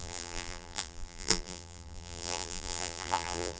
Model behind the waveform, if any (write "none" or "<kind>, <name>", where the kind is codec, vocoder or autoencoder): vocoder, BigVGAN v2